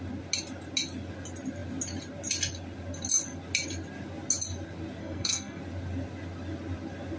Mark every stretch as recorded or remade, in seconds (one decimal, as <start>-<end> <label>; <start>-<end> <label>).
0.0-5.0 recorded; 5.0-5.6 remade; 5.6-7.2 recorded